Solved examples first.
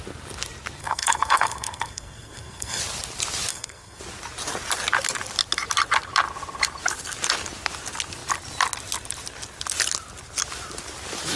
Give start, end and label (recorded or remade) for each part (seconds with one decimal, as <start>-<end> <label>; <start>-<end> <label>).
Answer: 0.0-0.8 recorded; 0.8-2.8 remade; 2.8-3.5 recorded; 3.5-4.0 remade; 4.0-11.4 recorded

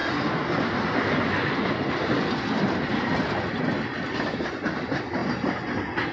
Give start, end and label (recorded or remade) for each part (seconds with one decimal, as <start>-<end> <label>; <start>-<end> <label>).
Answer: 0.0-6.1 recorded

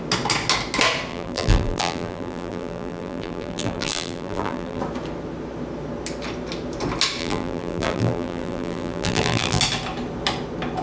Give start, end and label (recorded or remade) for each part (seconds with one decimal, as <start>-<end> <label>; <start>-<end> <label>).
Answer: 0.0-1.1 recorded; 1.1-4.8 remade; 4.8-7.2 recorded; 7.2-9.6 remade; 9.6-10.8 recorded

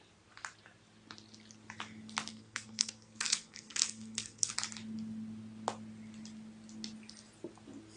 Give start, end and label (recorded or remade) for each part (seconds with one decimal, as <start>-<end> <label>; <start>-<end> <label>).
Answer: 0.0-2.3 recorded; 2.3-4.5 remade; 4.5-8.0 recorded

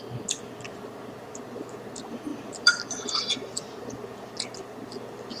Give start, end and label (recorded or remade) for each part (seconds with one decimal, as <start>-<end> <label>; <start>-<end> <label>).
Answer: 0.0-0.7 recorded; 0.7-1.3 remade; 1.3-2.3 recorded; 2.3-3.4 remade; 3.4-5.4 recorded

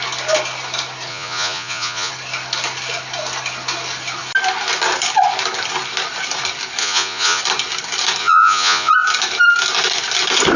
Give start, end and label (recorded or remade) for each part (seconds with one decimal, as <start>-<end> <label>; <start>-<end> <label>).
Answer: 0.0-1.1 recorded; 1.1-2.1 remade; 2.1-6.8 recorded; 6.8-7.4 remade; 7.4-8.2 recorded; 8.2-8.9 remade; 8.9-10.6 recorded

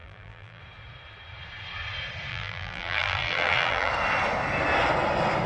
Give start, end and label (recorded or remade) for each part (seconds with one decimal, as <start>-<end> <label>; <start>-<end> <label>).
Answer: 0.0-0.6 remade; 0.6-2.3 recorded; 2.3-3.9 remade; 3.9-5.5 recorded

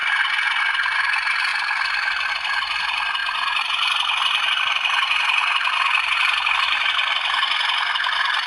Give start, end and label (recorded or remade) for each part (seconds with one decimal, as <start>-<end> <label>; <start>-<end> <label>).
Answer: 0.0-0.6 recorded; 0.6-3.2 remade; 3.2-4.6 recorded; 4.6-8.5 remade